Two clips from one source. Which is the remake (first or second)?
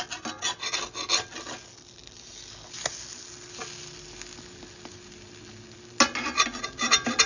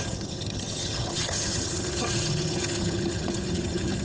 second